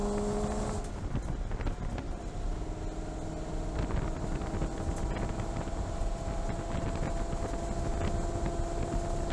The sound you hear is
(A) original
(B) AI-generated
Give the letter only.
A